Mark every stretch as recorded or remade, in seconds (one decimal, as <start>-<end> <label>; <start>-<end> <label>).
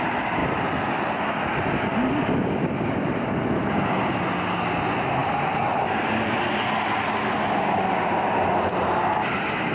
0.0-0.4 recorded; 0.4-4.2 remade; 4.2-5.2 recorded; 5.2-6.6 remade; 6.6-9.7 recorded